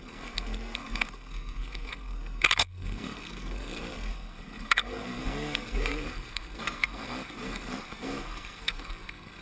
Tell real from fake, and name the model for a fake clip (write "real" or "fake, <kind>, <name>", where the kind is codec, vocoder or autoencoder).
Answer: fake, codec, SNAC